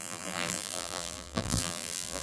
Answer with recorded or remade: remade